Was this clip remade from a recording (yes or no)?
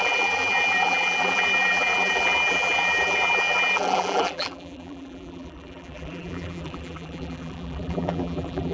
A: yes